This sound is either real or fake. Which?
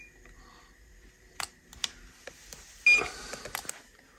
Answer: real